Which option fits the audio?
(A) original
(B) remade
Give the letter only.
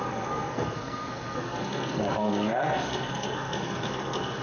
B